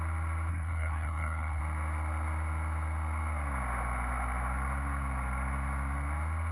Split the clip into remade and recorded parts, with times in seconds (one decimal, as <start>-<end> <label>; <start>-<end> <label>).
0.0-0.5 recorded; 0.5-1.6 remade; 1.6-6.5 recorded